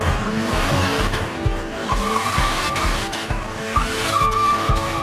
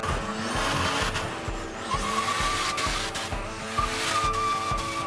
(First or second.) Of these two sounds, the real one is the second